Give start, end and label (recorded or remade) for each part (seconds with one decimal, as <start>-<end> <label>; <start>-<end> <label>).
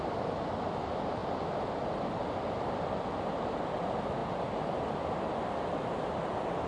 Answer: 0.0-6.7 recorded